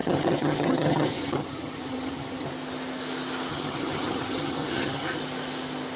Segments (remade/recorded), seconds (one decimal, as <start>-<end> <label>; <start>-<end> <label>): 0.0-2.5 remade; 2.5-3.5 recorded; 3.5-5.2 remade; 5.2-6.0 recorded